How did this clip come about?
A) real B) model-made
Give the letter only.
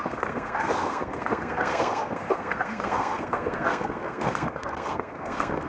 B